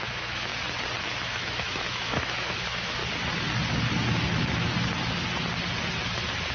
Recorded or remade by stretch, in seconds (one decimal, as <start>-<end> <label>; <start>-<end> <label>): 0.0-0.5 remade; 0.5-1.0 recorded; 1.0-3.0 remade; 3.0-6.5 recorded